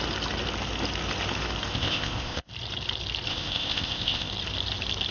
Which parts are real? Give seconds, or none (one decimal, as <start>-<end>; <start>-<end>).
0.0-1.7; 2.5-3.3; 4.3-5.1